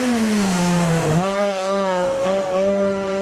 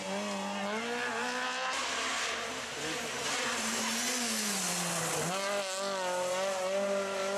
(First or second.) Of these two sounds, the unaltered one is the second